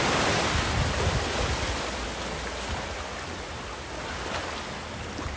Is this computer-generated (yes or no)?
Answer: no